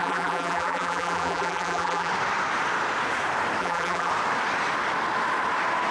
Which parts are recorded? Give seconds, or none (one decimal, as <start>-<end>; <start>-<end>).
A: 2.1-3.6; 4.1-5.9